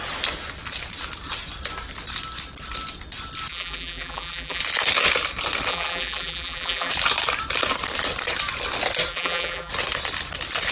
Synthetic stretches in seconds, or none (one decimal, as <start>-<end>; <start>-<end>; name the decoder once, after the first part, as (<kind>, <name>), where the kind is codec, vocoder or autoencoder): 3.5-4.6 (vocoder, BigVGAN v2); 5.7-6.9; 9.1-9.7